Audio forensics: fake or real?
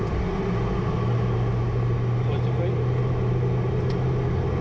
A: real